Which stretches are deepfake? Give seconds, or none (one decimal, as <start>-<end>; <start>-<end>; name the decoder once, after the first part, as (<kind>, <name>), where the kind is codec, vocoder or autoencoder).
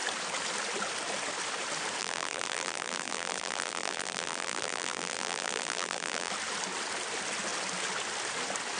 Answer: 2.0-6.3 (vocoder, BigVGAN v2)